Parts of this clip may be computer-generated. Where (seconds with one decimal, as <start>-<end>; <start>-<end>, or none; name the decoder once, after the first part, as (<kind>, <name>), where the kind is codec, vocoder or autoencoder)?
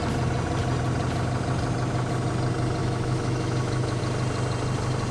2.8-4.0 (autoencoder, DAC-VAE)